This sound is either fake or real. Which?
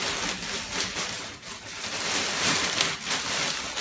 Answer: real